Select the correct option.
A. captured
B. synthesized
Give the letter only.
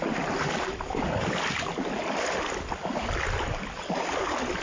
A